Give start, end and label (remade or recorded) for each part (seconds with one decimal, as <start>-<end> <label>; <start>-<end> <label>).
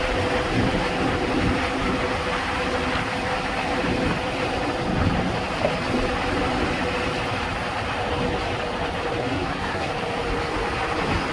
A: 0.0-9.2 recorded; 9.2-9.9 remade; 9.9-11.3 recorded